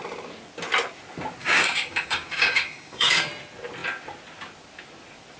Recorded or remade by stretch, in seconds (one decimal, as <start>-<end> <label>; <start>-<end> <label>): 0.0-1.4 recorded; 1.4-3.3 remade; 3.3-5.4 recorded

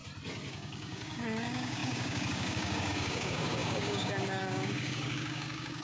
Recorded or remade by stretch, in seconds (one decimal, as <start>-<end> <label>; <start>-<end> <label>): 0.0-0.5 recorded; 0.5-5.8 remade

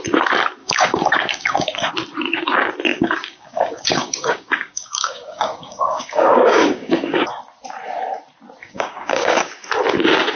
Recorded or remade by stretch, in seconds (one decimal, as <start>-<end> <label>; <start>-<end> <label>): 0.0-0.6 recorded; 0.6-1.9 remade; 1.9-2.9 recorded; 2.9-7.3 remade; 7.3-8.6 recorded; 8.6-9.5 remade; 9.5-10.4 recorded

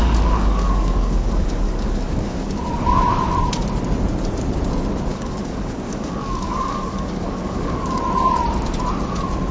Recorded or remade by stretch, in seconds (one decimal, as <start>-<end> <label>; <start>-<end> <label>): 0.0-2.6 remade; 2.6-5.1 recorded; 5.1-8.0 remade; 8.0-9.5 recorded